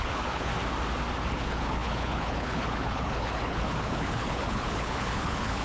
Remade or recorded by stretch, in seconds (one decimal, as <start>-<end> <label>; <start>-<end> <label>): 0.0-0.5 remade; 0.5-1.3 recorded; 1.3-5.6 remade